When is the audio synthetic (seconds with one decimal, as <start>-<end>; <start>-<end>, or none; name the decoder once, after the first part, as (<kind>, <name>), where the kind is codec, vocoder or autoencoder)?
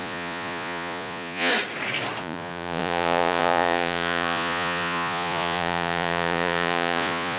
0.0-1.5 (vocoder, Vocos); 2.2-7.4